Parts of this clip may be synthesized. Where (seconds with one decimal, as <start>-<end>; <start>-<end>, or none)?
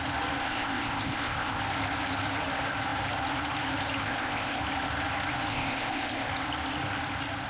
0.4-1.6; 4.0-4.6; 5.5-6.3